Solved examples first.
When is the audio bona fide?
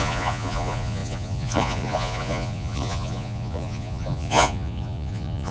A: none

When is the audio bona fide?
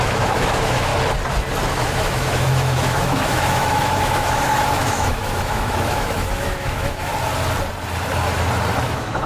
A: 0.9-1.7; 7.1-8.8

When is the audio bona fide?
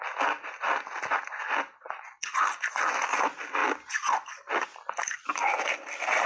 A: 0.0-6.3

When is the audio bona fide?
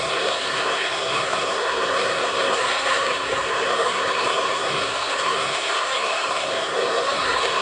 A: none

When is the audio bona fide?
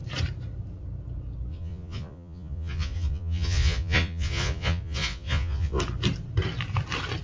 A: 0.0-1.5; 5.8-7.2